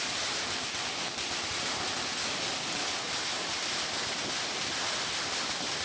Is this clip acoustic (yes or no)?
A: yes